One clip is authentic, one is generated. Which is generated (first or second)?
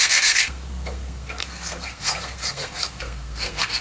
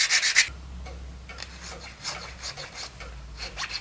first